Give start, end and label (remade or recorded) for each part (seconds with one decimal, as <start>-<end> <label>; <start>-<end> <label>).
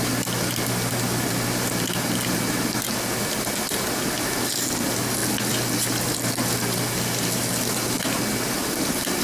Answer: 0.0-9.2 recorded